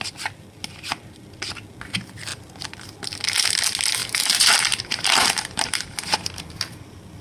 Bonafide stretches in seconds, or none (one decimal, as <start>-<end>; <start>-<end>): 0.0-4.0; 6.4-7.2

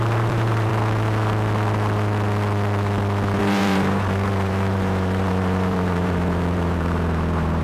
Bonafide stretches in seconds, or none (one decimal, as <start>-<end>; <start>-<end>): 0.7-3.4

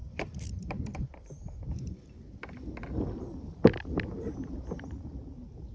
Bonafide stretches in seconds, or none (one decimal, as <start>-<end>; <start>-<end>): 1.5-5.7

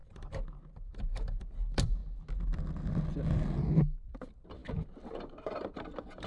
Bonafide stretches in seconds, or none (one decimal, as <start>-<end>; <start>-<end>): 2.0-4.0

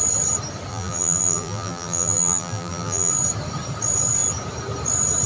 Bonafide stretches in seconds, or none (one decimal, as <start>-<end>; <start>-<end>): 0.0-0.7; 3.1-5.3